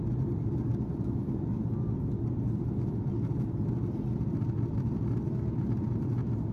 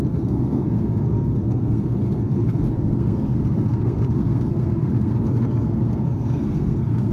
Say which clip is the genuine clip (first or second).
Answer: first